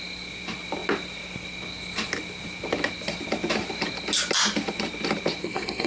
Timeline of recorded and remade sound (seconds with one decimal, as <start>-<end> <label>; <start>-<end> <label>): 0.0-5.4 recorded; 5.4-5.9 remade